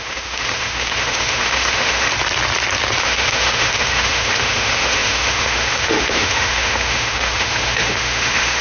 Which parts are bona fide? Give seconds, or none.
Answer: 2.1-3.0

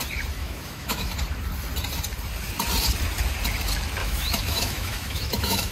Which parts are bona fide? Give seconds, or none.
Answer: 0.0-0.4; 1.1-4.0

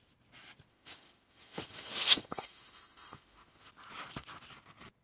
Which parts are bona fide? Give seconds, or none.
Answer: 0.0-0.7; 3.7-5.0